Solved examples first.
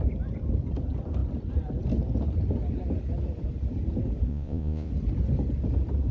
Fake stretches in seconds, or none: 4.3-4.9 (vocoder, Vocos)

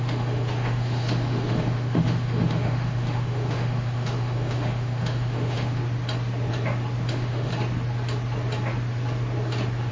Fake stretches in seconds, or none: 0.0-5.8 (autoencoder, DAC-VAE); 7.1-7.5

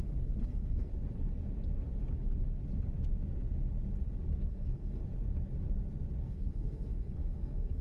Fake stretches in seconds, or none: 0.0-0.9 (codec, SNAC); 4.5-5.0; 6.2-7.8

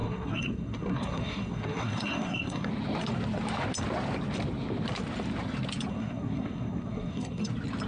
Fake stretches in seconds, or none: 0.0-2.7 (codec, SNAC); 5.9-7.5

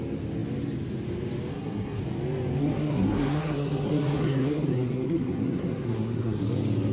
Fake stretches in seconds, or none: 1.5-2.0 (codec, SNAC); 2.6-6.4

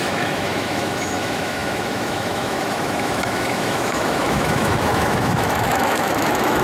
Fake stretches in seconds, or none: 0.0-6.6 (autoencoder, DAC-VAE)

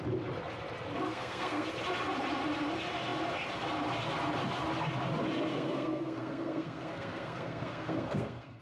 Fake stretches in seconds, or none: 1.1-1.7 (codec, SNAC); 5.5-8.6

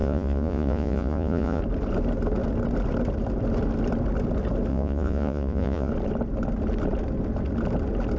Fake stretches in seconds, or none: 0.0-1.6 (vocoder, Vocos); 4.7-5.9